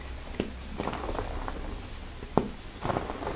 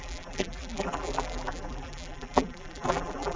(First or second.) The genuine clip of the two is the first